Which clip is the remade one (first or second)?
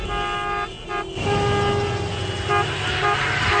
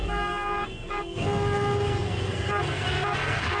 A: second